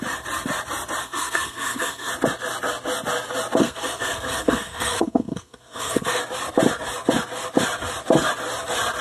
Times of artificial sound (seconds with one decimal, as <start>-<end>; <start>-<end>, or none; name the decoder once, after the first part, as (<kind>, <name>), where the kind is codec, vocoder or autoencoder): 1.0-2.1 (codec, SNAC); 3.6-6.2